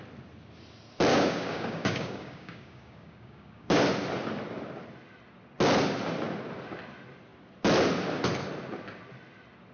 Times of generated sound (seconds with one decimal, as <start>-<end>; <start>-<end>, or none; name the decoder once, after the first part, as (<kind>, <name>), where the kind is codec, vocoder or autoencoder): 1.1-3.8 (codec, DAC)